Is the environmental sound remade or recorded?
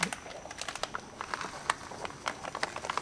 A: recorded